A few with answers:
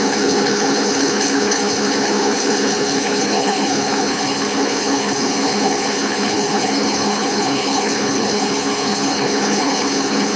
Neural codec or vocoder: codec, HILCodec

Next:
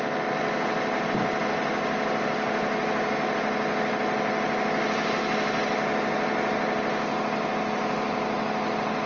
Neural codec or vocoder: none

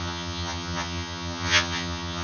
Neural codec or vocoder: vocoder, HiFi-GAN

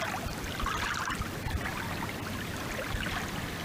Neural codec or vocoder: none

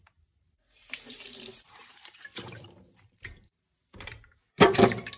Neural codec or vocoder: vocoder, BigVGAN v2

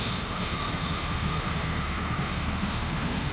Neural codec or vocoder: autoencoder, DAC-VAE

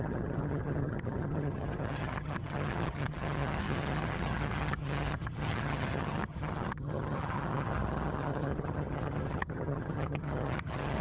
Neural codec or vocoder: vocoder, HiFi-GAN